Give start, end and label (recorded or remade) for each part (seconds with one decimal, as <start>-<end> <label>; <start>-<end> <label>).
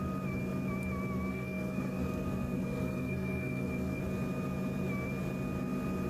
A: 0.0-1.3 recorded; 1.3-4.0 remade; 4.0-6.1 recorded